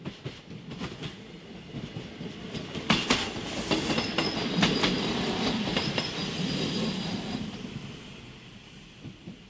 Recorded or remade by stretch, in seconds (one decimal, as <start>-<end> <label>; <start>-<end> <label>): 0.0-9.5 recorded